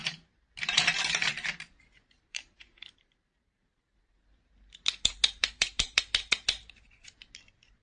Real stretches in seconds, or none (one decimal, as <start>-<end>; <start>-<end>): 4.0-5.4; 6.0-7.8